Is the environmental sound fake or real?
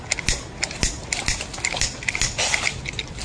real